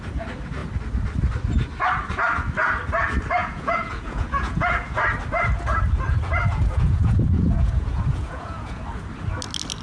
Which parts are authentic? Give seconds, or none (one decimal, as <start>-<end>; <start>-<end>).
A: 0.0-3.4; 5.0-6.5; 8.8-9.8